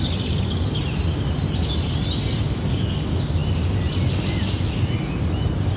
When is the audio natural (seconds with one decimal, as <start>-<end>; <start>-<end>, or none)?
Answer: 0.0-5.8